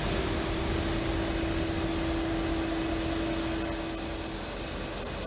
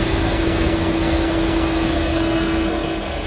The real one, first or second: first